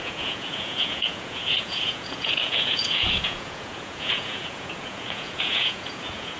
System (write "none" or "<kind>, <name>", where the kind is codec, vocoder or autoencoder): vocoder, Vocos